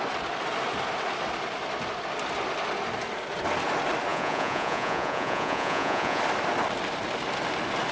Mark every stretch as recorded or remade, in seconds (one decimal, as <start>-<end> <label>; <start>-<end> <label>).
0.0-4.1 recorded; 4.1-6.2 remade; 6.2-7.9 recorded